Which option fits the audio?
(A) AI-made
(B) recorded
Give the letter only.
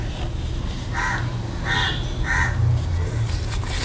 B